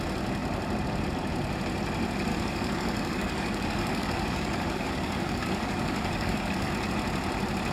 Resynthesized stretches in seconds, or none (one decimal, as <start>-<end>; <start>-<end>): 2.3-6.7